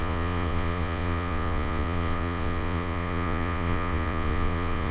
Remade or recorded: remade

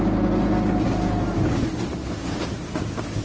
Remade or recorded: recorded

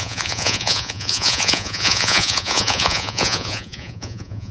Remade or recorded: remade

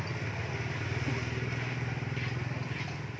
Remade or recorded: recorded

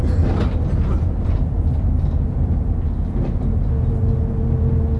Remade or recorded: recorded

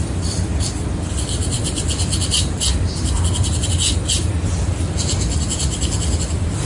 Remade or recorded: recorded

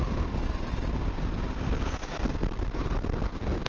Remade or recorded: recorded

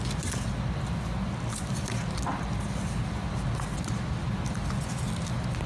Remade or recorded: recorded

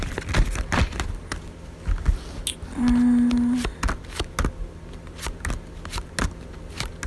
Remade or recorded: recorded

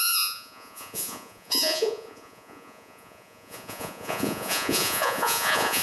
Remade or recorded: remade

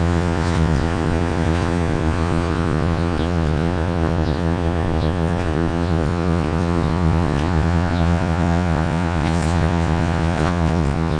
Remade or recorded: remade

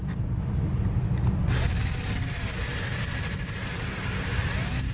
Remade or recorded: recorded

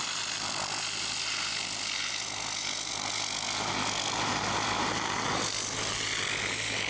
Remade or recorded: recorded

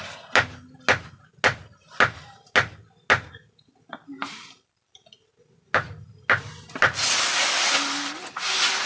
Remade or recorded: recorded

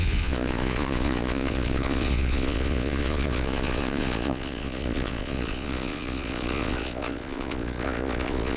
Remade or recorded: remade